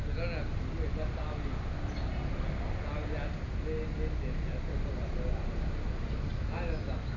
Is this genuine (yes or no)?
yes